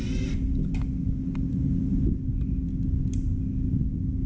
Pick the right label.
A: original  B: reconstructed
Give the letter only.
A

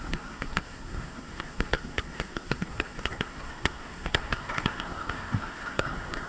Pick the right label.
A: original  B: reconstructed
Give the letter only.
B